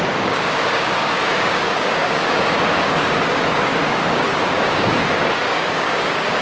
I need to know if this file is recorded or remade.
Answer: remade